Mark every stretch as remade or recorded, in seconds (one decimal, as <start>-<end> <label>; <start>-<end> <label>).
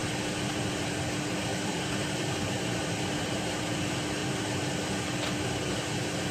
0.0-1.5 recorded; 1.5-3.8 remade; 3.8-4.2 recorded; 4.2-4.9 remade; 4.9-6.3 recorded